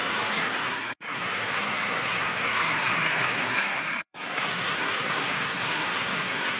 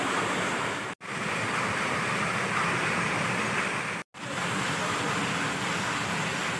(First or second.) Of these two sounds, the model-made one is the first